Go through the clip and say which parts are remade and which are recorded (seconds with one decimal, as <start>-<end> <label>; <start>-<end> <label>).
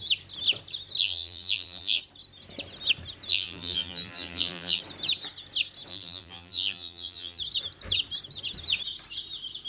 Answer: 0.0-1.0 recorded; 1.0-2.0 remade; 2.0-3.3 recorded; 3.3-4.8 remade; 4.8-5.9 recorded; 5.9-7.4 remade; 7.4-9.7 recorded